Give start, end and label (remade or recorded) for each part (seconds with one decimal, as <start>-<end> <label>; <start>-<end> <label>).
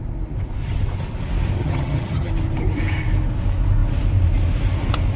0.0-1.6 recorded; 1.6-2.3 remade; 2.3-5.2 recorded